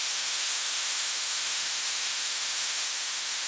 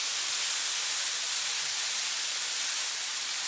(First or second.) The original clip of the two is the second